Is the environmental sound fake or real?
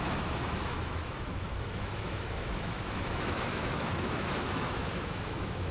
fake